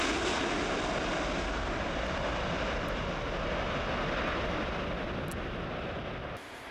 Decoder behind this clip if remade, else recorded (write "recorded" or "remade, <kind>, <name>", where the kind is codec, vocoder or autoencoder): recorded